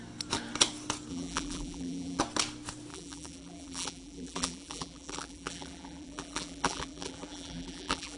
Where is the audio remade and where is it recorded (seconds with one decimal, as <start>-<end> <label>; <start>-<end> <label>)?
0.0-1.1 recorded; 1.1-2.2 remade; 2.2-2.9 recorded; 2.9-8.2 remade